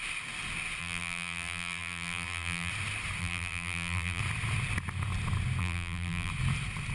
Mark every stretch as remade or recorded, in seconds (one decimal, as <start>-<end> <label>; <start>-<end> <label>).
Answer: 0.0-0.8 recorded; 0.8-2.7 remade; 2.7-3.2 recorded; 3.2-4.2 remade; 4.2-5.6 recorded; 5.6-6.3 remade; 6.3-6.9 recorded